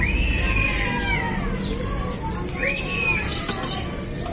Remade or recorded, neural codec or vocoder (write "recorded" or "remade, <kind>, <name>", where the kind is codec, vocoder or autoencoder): recorded